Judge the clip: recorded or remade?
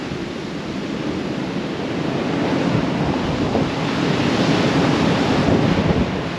recorded